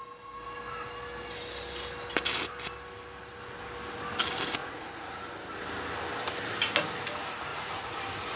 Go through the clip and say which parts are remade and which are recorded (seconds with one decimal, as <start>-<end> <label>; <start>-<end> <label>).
0.0-4.6 recorded; 4.6-5.1 remade; 5.1-7.5 recorded; 7.5-8.0 remade; 8.0-8.4 recorded